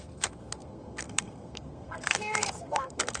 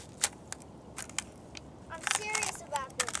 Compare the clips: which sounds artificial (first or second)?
first